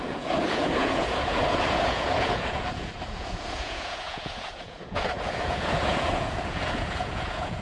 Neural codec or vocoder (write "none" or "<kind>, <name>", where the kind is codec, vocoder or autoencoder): vocoder, Vocos